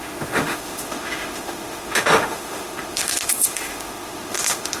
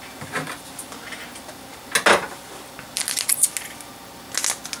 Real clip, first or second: second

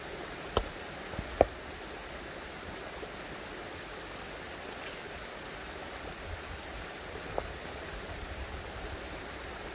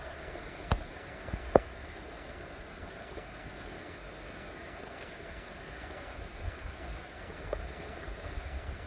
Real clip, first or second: first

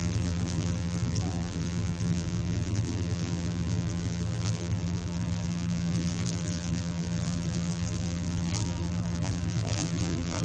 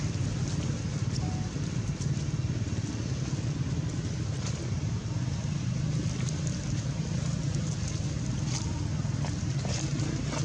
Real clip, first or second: second